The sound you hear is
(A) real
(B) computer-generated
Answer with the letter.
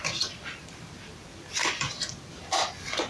B